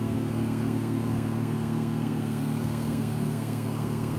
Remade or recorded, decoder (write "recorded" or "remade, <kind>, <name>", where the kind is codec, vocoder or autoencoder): remade, codec, SNAC